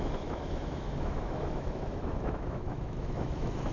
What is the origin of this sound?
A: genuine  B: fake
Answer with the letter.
B